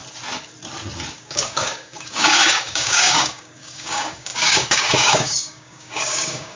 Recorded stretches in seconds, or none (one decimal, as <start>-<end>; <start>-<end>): 0.0-1.1